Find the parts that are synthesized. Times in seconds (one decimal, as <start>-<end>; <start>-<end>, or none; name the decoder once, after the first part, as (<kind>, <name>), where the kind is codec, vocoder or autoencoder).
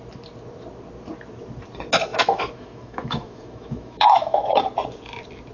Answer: 2.1-4.6 (autoencoder, DAC-VAE)